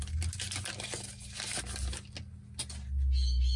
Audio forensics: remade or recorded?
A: recorded